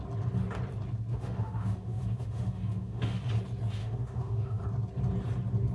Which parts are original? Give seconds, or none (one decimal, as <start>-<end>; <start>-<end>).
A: 0.0-1.1; 3.2-3.8; 4.6-5.7